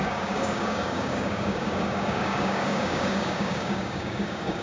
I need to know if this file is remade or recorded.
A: remade